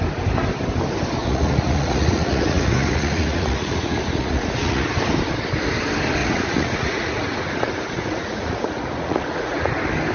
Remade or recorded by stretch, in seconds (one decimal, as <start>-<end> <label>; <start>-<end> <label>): 0.0-1.2 recorded; 1.2-4.9 remade; 4.9-6.2 recorded; 6.2-9.7 remade; 9.7-10.1 recorded